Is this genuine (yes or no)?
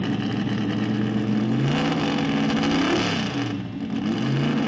yes